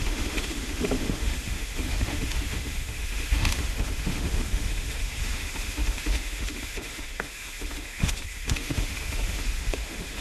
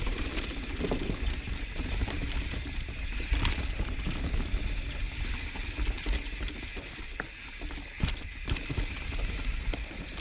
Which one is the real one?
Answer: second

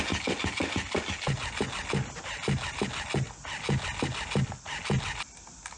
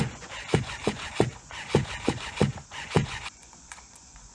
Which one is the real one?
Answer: first